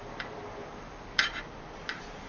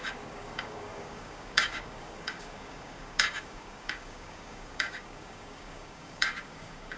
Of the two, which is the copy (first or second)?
second